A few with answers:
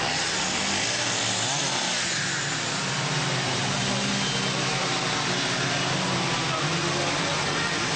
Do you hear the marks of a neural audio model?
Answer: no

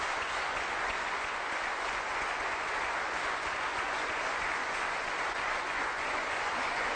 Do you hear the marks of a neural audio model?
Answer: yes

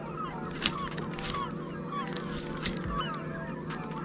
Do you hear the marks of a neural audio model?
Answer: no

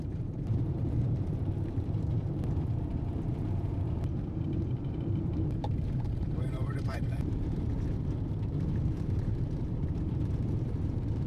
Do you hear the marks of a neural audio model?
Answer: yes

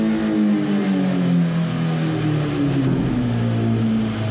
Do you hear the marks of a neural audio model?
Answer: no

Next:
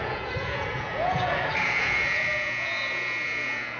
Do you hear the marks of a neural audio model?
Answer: yes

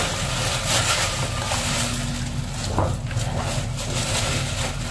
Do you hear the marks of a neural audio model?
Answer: no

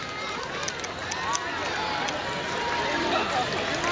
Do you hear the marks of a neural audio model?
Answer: no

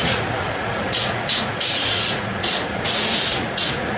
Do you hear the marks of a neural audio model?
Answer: yes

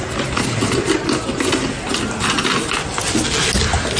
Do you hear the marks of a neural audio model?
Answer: no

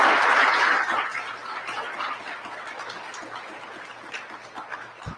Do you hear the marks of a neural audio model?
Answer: no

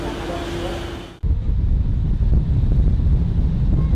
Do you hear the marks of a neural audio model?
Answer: no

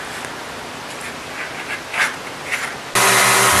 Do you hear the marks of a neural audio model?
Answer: no